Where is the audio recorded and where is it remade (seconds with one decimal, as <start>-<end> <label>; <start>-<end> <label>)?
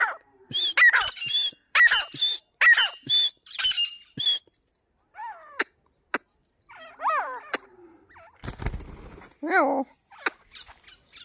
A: 0.0-11.2 recorded